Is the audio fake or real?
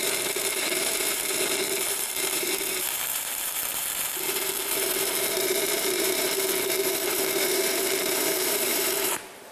fake